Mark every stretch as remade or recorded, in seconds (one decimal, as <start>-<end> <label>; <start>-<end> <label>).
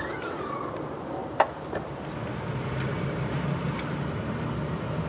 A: 0.0-1.2 recorded; 1.2-1.9 remade; 1.9-2.9 recorded; 2.9-5.1 remade